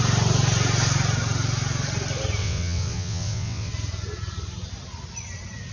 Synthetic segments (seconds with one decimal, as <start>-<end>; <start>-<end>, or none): 2.4-3.7